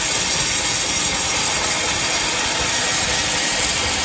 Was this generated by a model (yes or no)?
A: no